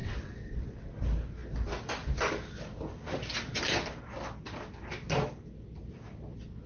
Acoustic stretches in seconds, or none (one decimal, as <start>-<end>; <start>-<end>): 0.9-6.7